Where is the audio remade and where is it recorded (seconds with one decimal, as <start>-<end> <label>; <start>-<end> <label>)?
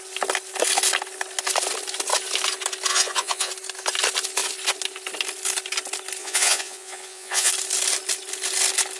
0.0-2.9 recorded; 2.9-3.5 remade; 3.5-6.2 recorded; 6.2-7.5 remade; 7.5-9.0 recorded